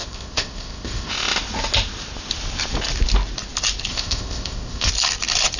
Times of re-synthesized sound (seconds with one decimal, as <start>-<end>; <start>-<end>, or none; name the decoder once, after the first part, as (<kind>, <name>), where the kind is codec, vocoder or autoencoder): 0.0-1.1 (codec, ZipCodec); 3.9-4.9